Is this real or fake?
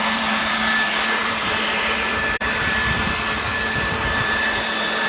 fake